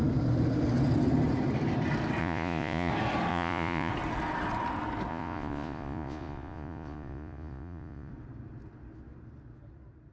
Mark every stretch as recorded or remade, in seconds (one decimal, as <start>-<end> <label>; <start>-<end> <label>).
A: 0.0-2.2 recorded; 2.2-2.9 remade; 2.9-3.3 recorded; 3.3-3.9 remade; 3.9-5.1 recorded; 5.1-8.1 remade; 8.1-10.1 recorded